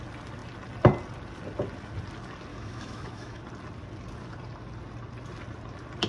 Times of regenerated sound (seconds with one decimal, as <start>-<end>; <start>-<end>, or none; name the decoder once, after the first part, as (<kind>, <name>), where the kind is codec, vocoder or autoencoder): 2.5-3.4 (autoencoder, DAC-VAE)

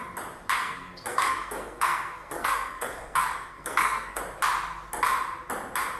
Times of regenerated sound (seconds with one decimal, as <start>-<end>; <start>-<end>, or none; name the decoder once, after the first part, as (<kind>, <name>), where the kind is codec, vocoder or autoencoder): 0.6-4.2 (codec, SNAC)

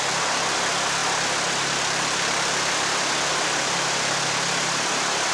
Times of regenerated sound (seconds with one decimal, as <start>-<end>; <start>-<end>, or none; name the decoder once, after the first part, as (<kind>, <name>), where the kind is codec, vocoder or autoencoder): none

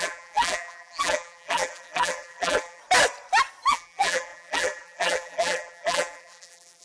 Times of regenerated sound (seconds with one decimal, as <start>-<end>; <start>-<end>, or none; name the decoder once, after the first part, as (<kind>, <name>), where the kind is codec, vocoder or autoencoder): 0.0-2.8 (vocoder, BigVGAN v2); 3.7-6.8

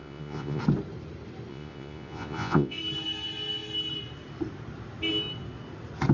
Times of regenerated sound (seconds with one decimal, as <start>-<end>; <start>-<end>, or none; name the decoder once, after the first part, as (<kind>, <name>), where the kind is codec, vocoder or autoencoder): 0.0-0.6 (vocoder, Vocos); 1.5-2.8

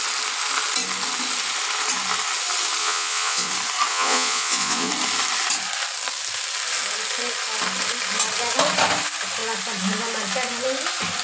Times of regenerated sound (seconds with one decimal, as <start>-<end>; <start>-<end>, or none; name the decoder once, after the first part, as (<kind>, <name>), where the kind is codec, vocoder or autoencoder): 2.8-3.5 (vocoder, Vocos); 3.9-4.9

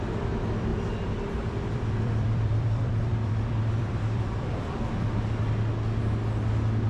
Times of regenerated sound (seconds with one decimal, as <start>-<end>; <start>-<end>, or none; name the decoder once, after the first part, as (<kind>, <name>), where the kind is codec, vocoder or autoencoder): 0.7-4.8 (vocoder, BigVGAN v2)

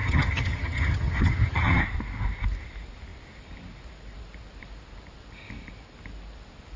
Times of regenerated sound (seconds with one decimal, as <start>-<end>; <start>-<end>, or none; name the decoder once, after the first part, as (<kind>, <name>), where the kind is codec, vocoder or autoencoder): 0.0-1.8 (vocoder, HiFi-GAN)